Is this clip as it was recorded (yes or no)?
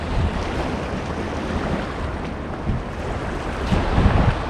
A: yes